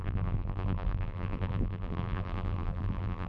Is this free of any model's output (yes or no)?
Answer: no